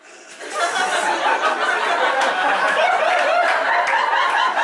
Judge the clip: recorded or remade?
recorded